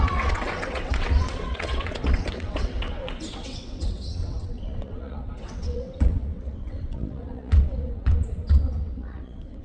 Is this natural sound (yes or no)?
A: no